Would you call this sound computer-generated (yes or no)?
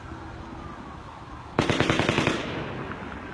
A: no